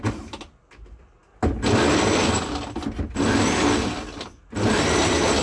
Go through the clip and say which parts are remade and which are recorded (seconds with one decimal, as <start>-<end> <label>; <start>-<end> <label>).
0.0-5.4 recorded